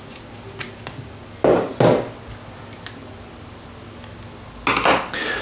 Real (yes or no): yes